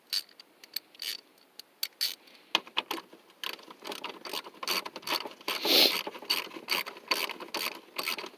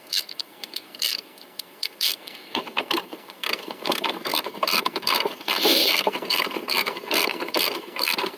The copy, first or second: second